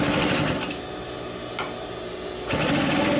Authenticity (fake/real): real